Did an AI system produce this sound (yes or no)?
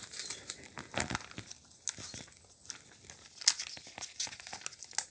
no